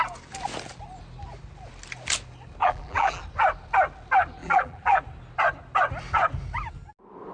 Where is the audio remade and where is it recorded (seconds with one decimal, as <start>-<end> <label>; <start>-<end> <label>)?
0.0-2.6 recorded; 2.6-3.2 remade; 3.2-4.4 recorded; 4.4-5.0 remade; 5.0-7.3 recorded